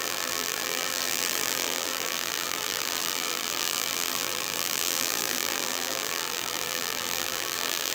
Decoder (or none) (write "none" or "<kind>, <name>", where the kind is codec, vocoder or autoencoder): vocoder, BigVGAN v2